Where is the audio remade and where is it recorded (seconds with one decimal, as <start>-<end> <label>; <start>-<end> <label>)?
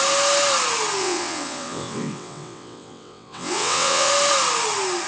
0.0-1.0 recorded; 1.0-4.1 remade; 4.1-5.1 recorded